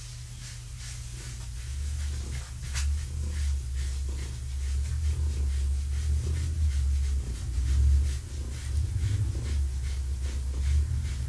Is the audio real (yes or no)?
yes